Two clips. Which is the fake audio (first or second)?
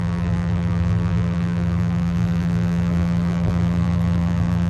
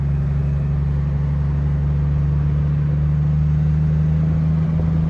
first